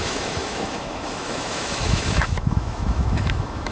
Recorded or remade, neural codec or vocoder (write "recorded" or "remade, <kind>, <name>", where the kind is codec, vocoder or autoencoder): remade, autoencoder, DAC-VAE